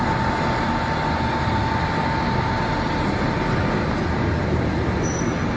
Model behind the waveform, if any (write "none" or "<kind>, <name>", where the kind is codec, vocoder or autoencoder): none